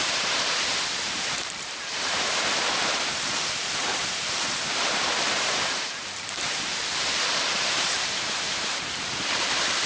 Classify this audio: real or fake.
fake